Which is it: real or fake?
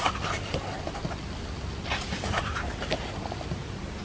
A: real